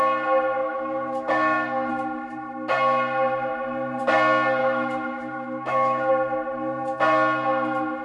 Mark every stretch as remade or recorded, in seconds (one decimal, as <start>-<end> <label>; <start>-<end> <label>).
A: 0.0-0.6 recorded; 0.6-1.9 remade; 1.9-4.6 recorded; 4.6-6.1 remade; 6.1-8.0 recorded